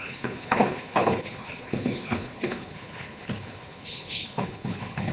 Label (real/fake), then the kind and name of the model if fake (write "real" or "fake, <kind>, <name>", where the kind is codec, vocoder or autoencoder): fake, codec, HILCodec